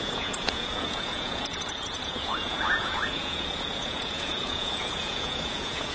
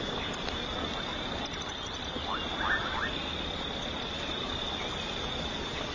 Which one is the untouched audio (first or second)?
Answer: second